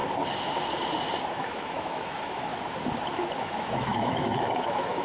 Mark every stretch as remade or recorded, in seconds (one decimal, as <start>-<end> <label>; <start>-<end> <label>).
0.0-1.3 recorded; 1.3-2.5 remade; 2.5-3.4 recorded; 3.4-5.0 remade